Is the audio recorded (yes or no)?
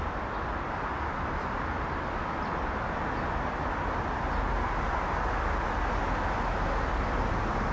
yes